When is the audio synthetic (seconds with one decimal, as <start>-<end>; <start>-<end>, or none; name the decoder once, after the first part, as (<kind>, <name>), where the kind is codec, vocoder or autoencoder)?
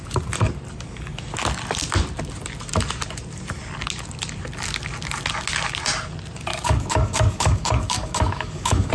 6.5-8.9 (codec, DAC)